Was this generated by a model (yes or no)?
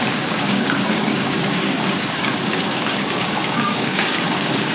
yes